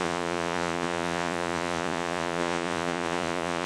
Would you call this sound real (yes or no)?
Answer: no